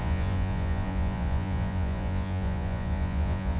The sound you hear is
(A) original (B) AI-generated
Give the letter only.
B